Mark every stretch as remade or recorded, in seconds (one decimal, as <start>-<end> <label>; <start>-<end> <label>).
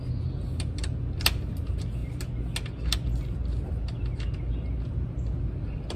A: 0.0-6.0 recorded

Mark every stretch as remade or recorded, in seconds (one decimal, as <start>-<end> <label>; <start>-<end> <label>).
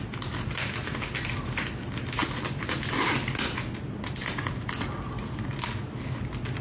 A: 0.0-6.6 recorded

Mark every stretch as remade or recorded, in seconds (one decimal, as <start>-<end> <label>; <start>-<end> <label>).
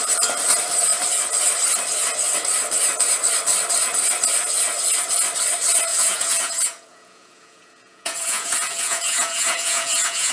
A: 0.0-5.9 recorded; 5.9-10.3 remade